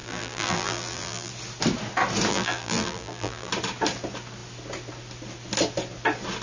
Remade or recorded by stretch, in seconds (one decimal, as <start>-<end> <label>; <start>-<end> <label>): 0.0-1.3 remade; 1.3-2.3 recorded; 2.3-3.5 remade; 3.5-6.4 recorded